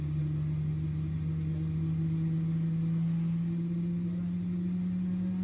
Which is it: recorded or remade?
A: recorded